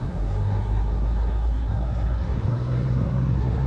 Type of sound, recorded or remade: remade